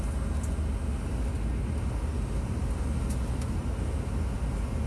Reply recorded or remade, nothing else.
recorded